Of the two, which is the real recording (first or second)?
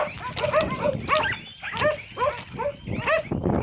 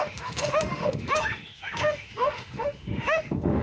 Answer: first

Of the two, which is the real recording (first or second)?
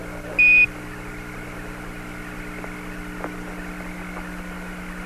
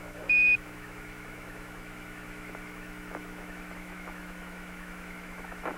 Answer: first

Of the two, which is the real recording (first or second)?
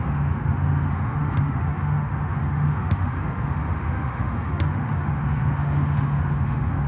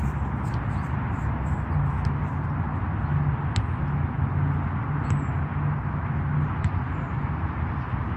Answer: second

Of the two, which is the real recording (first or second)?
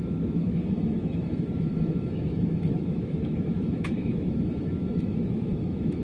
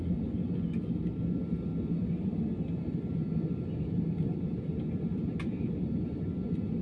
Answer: second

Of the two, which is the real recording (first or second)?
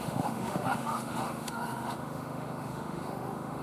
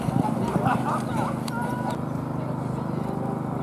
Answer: second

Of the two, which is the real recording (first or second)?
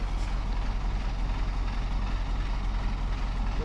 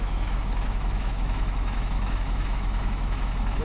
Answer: first